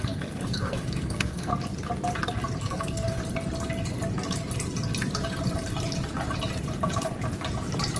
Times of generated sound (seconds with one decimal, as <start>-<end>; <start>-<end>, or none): 0.0-1.5; 2.6-3.2